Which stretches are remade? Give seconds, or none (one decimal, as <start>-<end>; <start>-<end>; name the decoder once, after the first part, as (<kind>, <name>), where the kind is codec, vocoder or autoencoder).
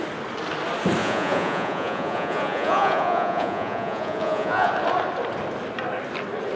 1.0-4.7 (vocoder, Vocos)